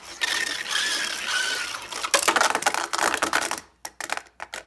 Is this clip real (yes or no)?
yes